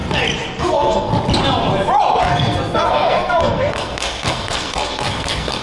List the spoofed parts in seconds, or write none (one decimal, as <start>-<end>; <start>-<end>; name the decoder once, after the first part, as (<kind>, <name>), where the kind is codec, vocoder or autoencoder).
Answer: 0.6-1.1 (codec, SNAC); 2.2-5.6